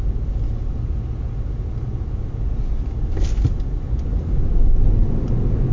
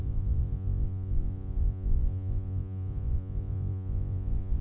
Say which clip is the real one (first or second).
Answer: first